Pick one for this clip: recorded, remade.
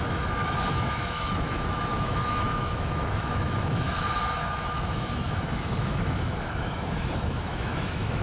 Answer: remade